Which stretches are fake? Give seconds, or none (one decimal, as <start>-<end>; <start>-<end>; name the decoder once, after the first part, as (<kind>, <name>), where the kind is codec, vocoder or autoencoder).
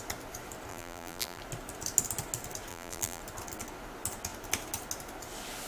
0.7-1.4 (vocoder, BigVGAN v2); 2.7-3.2